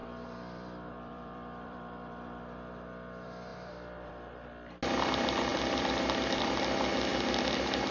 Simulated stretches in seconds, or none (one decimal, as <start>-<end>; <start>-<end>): 0.0-2.4; 3.5-4.1; 5.5-6.4